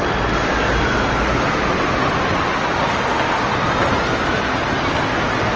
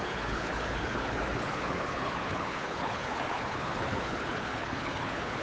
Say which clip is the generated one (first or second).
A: second